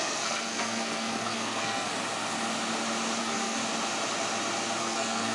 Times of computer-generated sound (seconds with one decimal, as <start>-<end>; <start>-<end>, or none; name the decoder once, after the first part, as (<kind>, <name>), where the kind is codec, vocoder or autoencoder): 0.0-1.9 (codec, SNAC); 3.2-3.6; 4.8-5.3